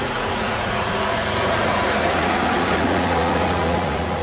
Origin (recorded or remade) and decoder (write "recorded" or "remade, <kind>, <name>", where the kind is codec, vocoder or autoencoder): remade, vocoder, Vocos